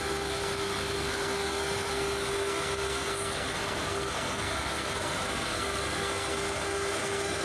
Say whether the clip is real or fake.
fake